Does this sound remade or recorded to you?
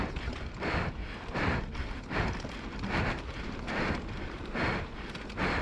recorded